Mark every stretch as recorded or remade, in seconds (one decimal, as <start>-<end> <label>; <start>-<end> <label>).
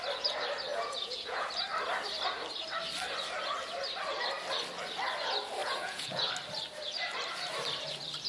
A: 0.0-0.7 recorded; 0.7-1.5 remade; 1.5-5.6 recorded; 5.6-6.3 remade; 6.3-8.3 recorded